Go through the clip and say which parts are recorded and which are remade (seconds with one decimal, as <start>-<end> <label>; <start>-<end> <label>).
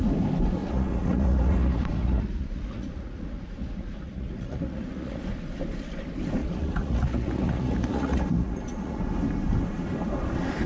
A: 0.0-0.6 recorded; 0.6-5.2 remade; 5.2-6.4 recorded; 6.4-9.0 remade; 9.0-10.7 recorded